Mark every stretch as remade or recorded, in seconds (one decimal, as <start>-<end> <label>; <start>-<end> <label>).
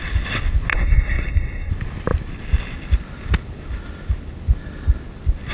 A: 0.0-0.7 recorded; 0.7-1.7 remade; 1.7-5.5 recorded